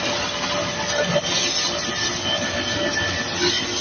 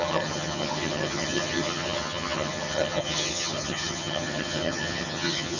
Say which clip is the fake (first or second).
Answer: second